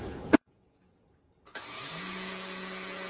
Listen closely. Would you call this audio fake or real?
fake